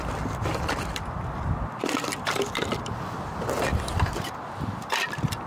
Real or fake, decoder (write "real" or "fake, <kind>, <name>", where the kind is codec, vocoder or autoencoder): fake, vocoder, BigVGAN v2